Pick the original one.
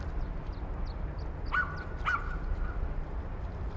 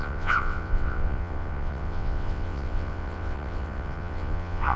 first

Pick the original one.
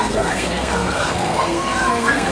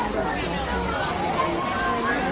second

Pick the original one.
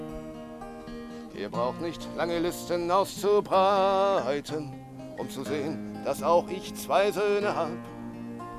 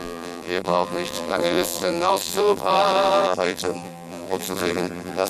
first